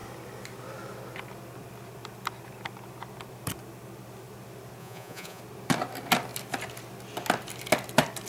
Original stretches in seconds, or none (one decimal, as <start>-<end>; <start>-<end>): 0.0-4.8; 5.4-8.3